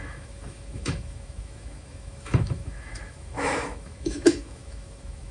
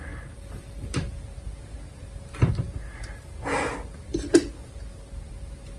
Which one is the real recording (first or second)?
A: second